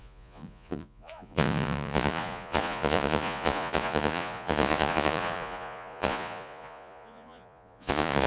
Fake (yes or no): yes